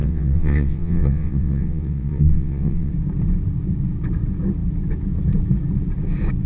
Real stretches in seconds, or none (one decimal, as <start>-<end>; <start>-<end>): 2.9-6.5